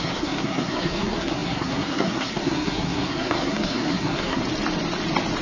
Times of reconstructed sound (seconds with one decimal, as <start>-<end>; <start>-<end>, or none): 0.0-4.4